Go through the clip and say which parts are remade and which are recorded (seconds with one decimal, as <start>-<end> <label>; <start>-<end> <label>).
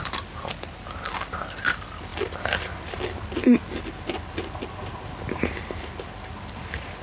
0.0-7.0 recorded